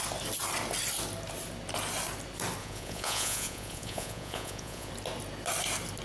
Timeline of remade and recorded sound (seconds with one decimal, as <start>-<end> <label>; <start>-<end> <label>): 0.0-2.6 recorded; 2.6-4.9 remade; 4.9-6.0 recorded